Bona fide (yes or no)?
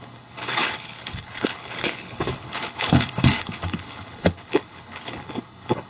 no